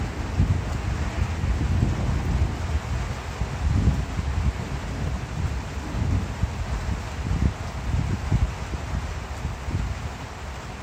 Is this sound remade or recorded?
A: recorded